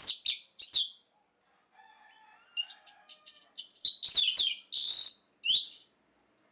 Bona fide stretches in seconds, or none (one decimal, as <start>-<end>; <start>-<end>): 0.0-6.5